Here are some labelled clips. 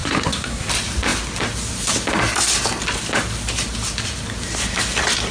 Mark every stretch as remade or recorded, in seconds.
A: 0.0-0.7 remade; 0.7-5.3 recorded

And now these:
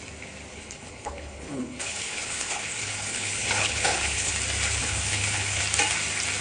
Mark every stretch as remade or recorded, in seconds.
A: 0.0-0.5 recorded; 0.5-4.3 remade; 4.3-4.8 recorded; 4.8-5.6 remade; 5.6-6.4 recorded

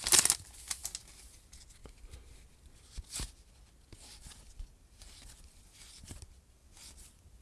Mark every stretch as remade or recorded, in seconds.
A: 0.0-7.4 recorded

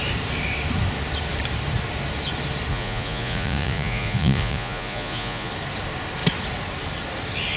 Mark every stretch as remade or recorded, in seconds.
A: 0.0-2.7 recorded; 2.7-5.5 remade; 5.5-7.6 recorded

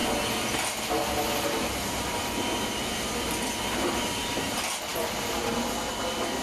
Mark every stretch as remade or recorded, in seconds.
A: 0.0-6.4 recorded